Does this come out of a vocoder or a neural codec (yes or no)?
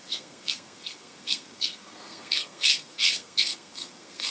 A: yes